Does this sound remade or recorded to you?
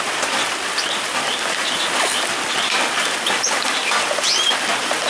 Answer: remade